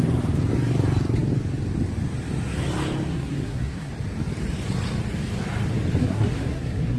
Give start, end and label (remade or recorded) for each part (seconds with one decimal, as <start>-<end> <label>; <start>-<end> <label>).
0.0-3.1 recorded; 3.1-3.9 remade; 3.9-6.0 recorded; 6.0-7.0 remade